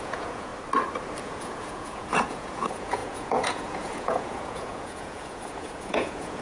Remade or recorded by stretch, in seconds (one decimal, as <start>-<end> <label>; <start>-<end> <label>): 0.0-0.5 remade; 0.5-1.2 recorded; 1.2-6.4 remade